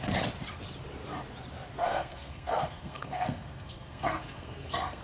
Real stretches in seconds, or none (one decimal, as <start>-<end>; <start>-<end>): 0.0-1.8